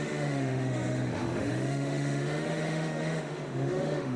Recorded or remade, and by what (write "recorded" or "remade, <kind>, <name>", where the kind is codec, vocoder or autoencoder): remade, autoencoder, DAC-VAE